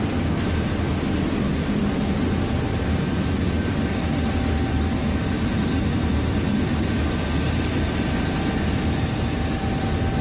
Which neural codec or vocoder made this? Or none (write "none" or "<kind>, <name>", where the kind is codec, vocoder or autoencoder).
none